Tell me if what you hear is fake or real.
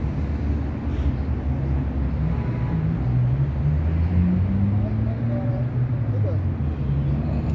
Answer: real